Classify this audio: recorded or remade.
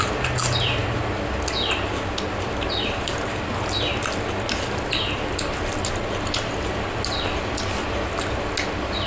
recorded